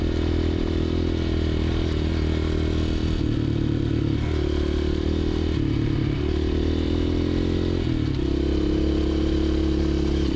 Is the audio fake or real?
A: real